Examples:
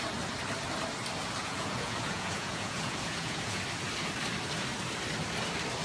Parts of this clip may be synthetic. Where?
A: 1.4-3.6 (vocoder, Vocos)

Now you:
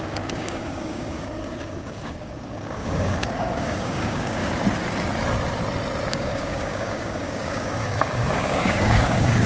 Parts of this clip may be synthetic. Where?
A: 0.0-4.4 (codec, DAC); 6.1-9.5

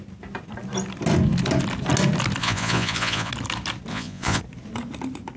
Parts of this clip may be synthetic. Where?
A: 2.4-3.3 (vocoder, Vocos); 3.9-4.4

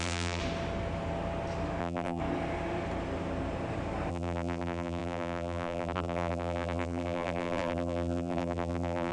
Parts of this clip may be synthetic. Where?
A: 0.0-0.4 (vocoder, BigVGAN v2); 1.8-2.2; 4.1-9.1

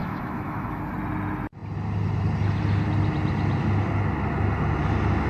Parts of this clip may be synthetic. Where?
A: 0.0-0.8 (autoencoder, DAC-VAE)

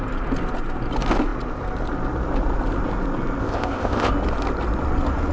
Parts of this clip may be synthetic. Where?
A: 3.4-4.1 (codec, ZipCodec)

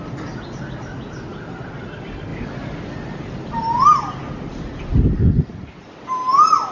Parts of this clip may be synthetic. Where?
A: none

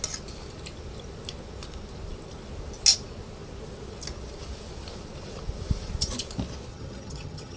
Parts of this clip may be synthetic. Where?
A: 6.7-7.6 (vocoder, HiFi-GAN)